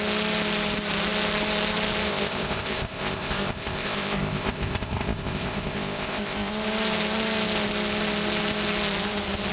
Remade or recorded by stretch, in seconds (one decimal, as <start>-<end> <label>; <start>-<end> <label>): 0.0-2.1 recorded; 2.1-6.5 remade; 6.5-9.5 recorded